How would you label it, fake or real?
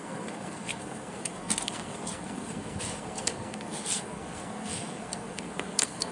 fake